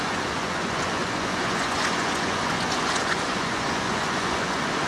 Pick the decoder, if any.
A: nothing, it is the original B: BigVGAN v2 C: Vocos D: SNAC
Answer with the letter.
C